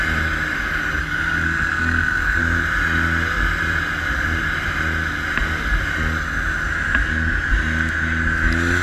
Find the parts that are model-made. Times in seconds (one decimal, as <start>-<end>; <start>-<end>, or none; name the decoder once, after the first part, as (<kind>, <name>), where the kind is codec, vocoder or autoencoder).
1.0-2.4 (codec, SNAC)